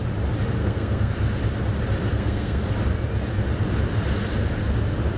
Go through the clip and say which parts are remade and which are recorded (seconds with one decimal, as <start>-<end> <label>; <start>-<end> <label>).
0.0-0.6 recorded; 0.6-1.1 remade; 1.1-2.1 recorded; 2.1-2.6 remade; 2.6-5.2 recorded